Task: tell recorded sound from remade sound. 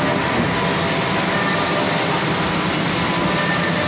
recorded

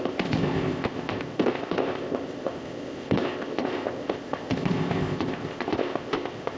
remade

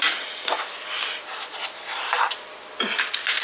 recorded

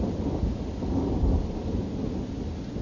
recorded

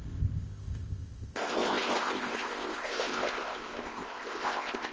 remade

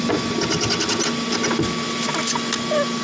recorded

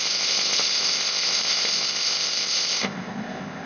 remade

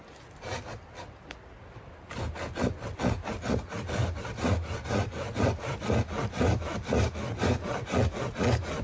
recorded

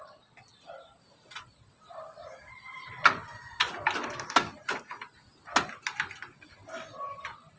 recorded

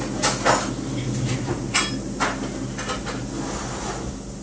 recorded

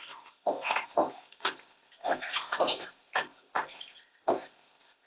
remade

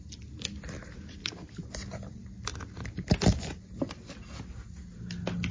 recorded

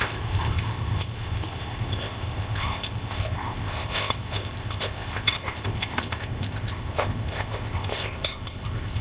remade